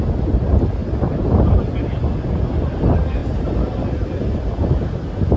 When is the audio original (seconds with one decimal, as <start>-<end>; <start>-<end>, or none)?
0.0-5.4